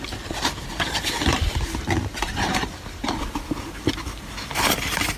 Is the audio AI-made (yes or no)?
no